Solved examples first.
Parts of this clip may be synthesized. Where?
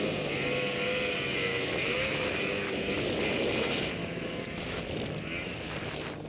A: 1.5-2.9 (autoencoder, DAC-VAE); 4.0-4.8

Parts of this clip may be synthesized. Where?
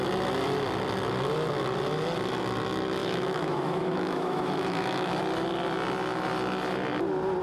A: 3.0-5.1 (autoencoder, DAC-VAE)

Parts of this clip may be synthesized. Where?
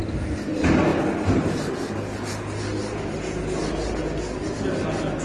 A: none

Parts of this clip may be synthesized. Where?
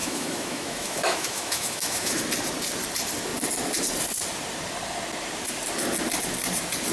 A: 0.0-2.2 (autoencoder, DAC-VAE)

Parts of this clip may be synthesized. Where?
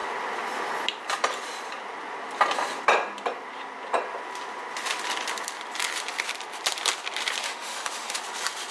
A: 7.4-8.2 (autoencoder, DAC-VAE)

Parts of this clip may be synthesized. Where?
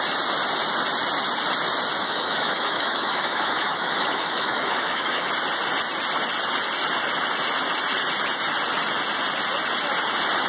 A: 2.0-5.3 (autoencoder, DAC-VAE)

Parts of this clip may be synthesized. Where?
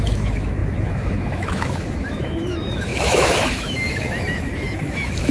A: 0.0-5.3 (autoencoder, DAC-VAE)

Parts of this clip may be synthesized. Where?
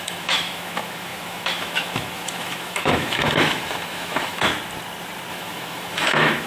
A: 0.0-4.5 (autoencoder, DAC-VAE); 5.3-6.5